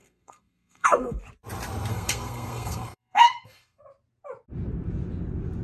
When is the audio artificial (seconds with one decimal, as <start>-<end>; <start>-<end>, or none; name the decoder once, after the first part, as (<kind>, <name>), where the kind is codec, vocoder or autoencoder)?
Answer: 0.0-1.2 (codec, SNAC); 1.9-3.8